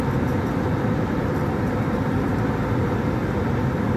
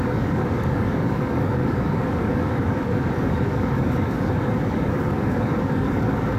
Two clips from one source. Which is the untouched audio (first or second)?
first